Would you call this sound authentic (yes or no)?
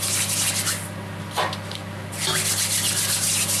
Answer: yes